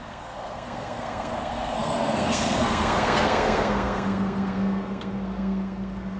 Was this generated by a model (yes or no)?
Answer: yes